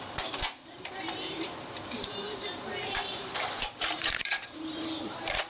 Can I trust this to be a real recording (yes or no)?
no